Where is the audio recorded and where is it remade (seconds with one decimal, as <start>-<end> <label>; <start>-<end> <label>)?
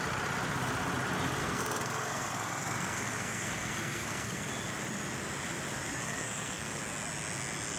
0.0-1.4 recorded; 1.4-4.5 remade; 4.5-6.0 recorded; 6.0-6.8 remade; 6.8-7.8 recorded